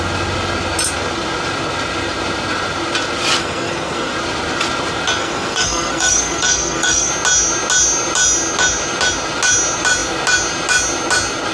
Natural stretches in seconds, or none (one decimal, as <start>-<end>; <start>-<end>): 0.0-3.4; 4.1-5.2; 7.1-11.5